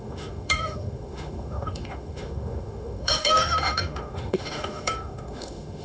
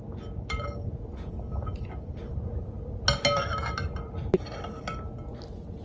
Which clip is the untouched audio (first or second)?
second